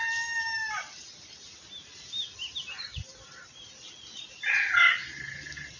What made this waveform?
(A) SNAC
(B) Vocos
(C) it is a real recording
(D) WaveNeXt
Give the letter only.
C